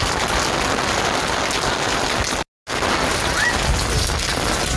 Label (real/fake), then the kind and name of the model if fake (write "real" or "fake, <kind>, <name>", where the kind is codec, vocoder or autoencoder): real